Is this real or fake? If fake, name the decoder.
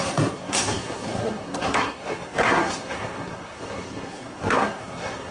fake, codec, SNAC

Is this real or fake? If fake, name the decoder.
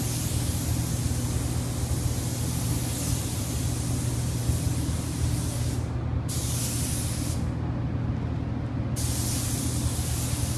real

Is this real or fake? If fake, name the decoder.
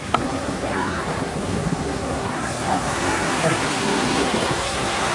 fake, codec, SNAC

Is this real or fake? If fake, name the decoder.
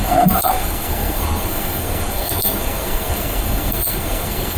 fake, codec, SNAC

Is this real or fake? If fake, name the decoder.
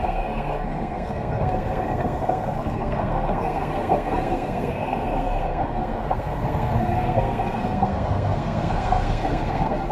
fake, codec, SNAC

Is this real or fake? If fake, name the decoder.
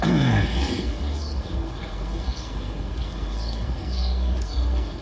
fake, codec, SNAC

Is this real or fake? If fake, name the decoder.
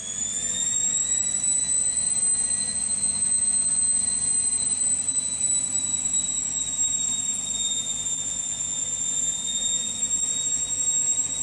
real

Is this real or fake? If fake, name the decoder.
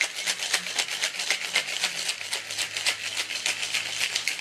real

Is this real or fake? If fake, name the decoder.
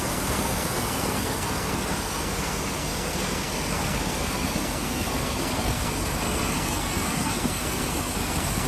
fake, codec, SNAC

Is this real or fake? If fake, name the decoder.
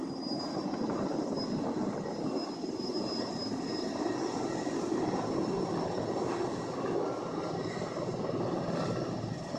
real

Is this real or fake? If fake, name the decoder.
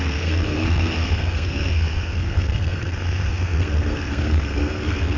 fake, codec, SNAC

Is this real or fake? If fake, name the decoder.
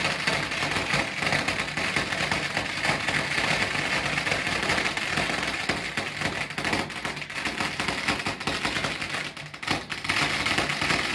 real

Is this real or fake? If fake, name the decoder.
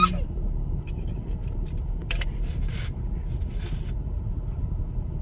real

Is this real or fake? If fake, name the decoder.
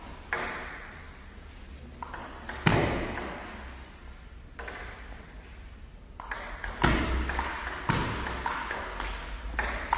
real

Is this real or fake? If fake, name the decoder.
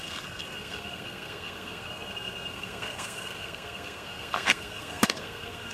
fake, codec, SNAC